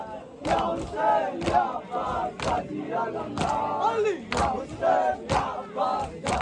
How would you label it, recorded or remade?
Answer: recorded